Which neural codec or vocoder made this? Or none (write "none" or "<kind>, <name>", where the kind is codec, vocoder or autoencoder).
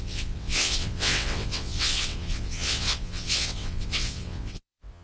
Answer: vocoder, WaveNeXt